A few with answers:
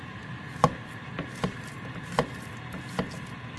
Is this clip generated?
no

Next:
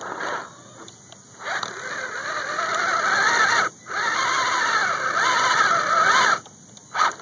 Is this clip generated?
no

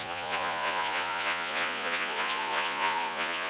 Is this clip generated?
yes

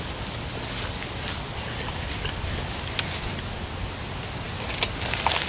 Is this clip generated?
no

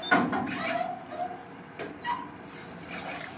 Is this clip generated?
no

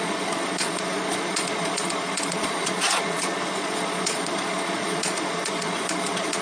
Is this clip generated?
yes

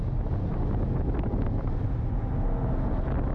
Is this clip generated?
no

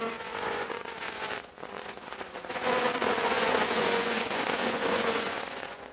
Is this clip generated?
yes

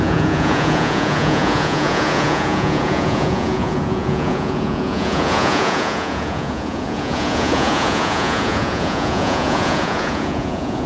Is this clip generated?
yes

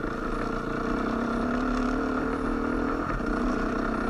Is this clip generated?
no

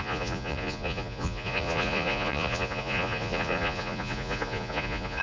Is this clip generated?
yes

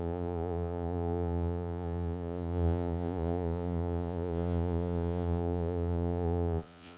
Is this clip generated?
yes